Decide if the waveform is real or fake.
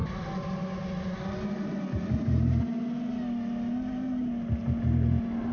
real